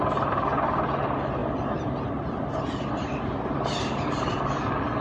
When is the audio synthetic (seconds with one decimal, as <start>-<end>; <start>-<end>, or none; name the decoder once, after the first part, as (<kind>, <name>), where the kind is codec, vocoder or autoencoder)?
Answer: 1.4-4.4 (vocoder, BigVGAN v2)